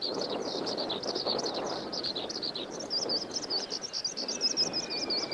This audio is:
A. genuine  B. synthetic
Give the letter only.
A